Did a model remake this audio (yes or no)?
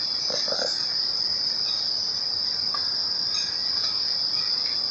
no